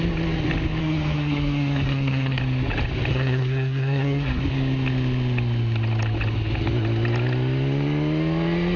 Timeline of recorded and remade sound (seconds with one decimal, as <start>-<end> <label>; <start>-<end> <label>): 0.0-0.8 recorded; 0.8-2.4 remade; 2.4-3.1 recorded; 3.1-4.4 remade; 4.4-8.8 recorded